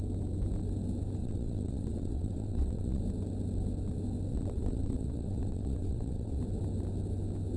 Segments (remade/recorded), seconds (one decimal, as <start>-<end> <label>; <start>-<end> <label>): 0.0-1.2 recorded; 1.2-3.0 remade; 3.0-4.3 recorded; 4.3-6.4 remade; 6.4-7.6 recorded